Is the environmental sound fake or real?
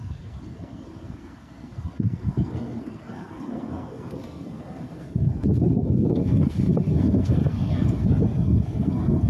fake